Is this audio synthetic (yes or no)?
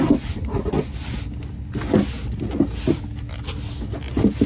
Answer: no